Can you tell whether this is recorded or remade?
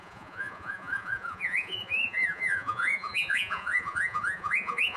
remade